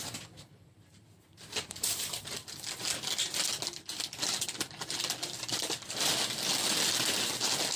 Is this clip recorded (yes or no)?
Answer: yes